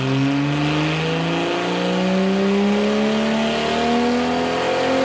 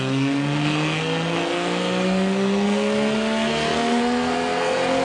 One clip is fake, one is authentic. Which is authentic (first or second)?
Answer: first